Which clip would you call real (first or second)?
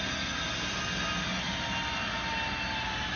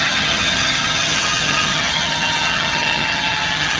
first